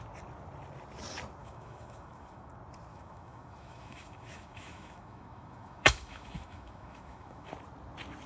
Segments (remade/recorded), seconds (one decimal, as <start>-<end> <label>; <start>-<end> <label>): 0.0-1.4 recorded; 1.4-2.5 remade; 2.5-2.9 recorded; 2.9-7.5 remade; 7.5-8.3 recorded